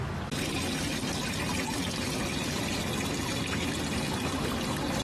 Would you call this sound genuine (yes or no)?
yes